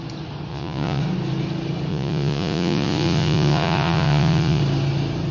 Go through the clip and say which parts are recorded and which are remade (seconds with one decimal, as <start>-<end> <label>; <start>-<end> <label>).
0.0-0.5 recorded; 0.5-1.0 remade; 1.0-1.9 recorded; 1.9-4.6 remade; 4.6-5.3 recorded